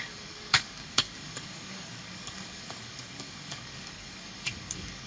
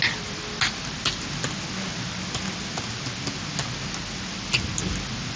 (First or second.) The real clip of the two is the second